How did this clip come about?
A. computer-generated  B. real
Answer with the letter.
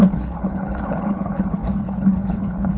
A